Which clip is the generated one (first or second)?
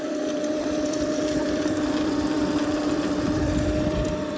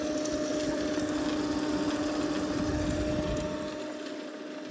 first